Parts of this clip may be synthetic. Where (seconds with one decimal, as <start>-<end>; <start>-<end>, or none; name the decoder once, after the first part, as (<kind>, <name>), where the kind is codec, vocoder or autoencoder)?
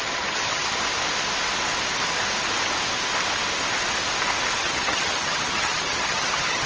0.0-0.8 (vocoder, HiFi-GAN); 4.6-6.7